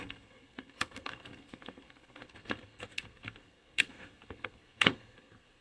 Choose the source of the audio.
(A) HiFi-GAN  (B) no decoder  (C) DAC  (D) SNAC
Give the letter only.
D